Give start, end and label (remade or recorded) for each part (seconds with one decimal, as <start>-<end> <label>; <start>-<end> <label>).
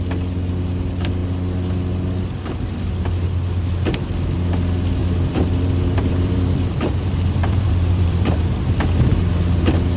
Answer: 0.0-5.0 recorded; 5.0-8.4 remade; 8.4-10.0 recorded